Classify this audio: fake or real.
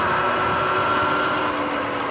real